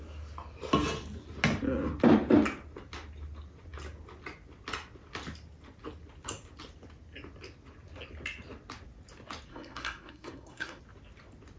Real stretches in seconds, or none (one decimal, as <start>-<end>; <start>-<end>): 0.0-9.5; 10.8-11.6